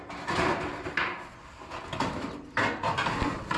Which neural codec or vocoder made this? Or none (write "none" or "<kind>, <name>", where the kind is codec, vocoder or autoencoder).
none